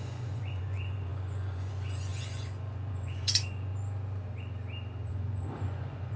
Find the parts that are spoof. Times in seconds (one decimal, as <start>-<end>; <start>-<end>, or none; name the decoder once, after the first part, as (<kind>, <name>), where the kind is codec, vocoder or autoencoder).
0.0-3.7 (vocoder, Vocos); 5.1-6.2